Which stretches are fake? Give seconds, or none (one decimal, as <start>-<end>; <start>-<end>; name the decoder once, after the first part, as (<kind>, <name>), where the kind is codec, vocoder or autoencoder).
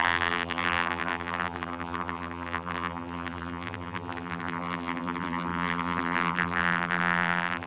0.0-7.7 (vocoder, BigVGAN v2)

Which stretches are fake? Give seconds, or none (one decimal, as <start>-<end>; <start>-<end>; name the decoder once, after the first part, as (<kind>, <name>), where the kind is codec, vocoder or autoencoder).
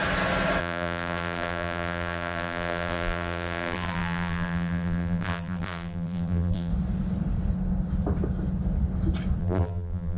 0.6-6.7 (vocoder, BigVGAN v2); 9.4-10.2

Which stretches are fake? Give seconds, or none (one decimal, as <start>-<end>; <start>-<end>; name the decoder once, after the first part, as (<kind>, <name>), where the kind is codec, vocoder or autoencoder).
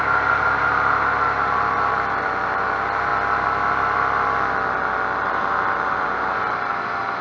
0.0-3.1 (vocoder, BigVGAN v2); 5.2-7.2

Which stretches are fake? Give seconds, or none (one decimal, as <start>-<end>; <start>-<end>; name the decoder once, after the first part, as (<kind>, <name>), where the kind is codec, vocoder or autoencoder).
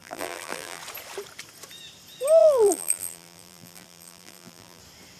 0.0-0.8 (vocoder, BigVGAN v2); 2.4-4.8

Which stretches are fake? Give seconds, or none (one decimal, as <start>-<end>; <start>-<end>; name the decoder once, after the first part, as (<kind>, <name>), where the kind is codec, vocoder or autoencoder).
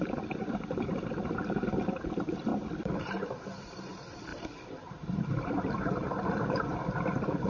0.0-2.5 (vocoder, BigVGAN v2); 3.0-7.5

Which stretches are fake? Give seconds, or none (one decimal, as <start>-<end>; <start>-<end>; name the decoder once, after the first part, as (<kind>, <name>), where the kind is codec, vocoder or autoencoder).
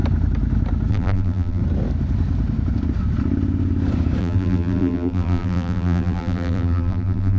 0.9-1.6 (vocoder, BigVGAN v2); 4.2-7.4